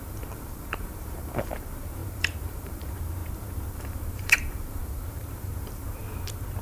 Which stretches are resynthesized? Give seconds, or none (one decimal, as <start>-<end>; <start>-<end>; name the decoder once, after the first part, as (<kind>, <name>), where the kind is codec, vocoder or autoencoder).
0.0-3.2 (vocoder, BigVGAN v2); 3.7-6.0